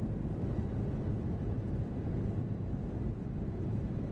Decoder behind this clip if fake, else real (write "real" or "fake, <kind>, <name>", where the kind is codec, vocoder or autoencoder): real